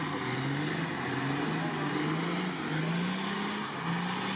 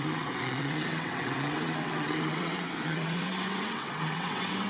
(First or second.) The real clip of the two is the first